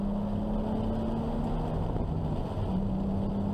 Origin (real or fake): real